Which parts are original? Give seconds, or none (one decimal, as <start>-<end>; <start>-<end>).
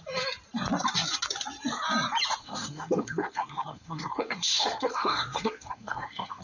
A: 0.0-2.4